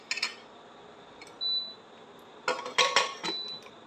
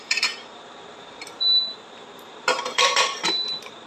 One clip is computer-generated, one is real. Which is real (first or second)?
first